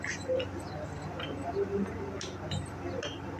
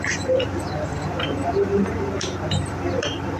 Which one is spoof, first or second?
second